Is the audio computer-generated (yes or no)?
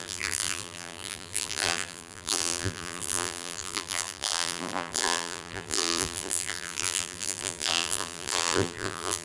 yes